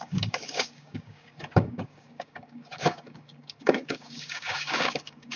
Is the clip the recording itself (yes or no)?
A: no